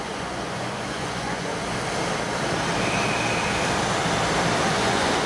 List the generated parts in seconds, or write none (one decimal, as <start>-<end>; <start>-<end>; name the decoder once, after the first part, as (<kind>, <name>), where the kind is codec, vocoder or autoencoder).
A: 0.0-1.5 (vocoder, Vocos); 4.7-5.3